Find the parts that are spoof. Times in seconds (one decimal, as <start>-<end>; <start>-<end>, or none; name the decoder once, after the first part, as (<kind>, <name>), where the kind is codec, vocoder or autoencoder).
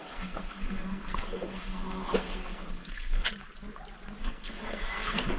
0.0-3.3 (codec, SNAC); 4.2-5.4